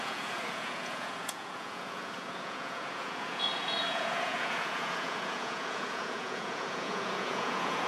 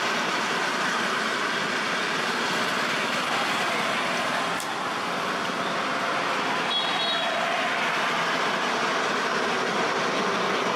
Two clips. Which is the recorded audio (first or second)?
second